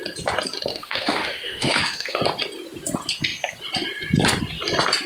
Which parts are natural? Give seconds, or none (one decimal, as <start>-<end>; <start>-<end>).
0.0-0.7; 2.2-5.1